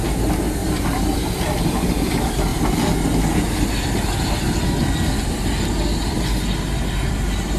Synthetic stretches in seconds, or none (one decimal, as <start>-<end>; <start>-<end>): 0.6-2.1